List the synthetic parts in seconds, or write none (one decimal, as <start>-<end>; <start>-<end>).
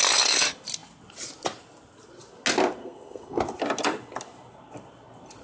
2.8-3.4